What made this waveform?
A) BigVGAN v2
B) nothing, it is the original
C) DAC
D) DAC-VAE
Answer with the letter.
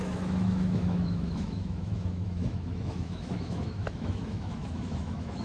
D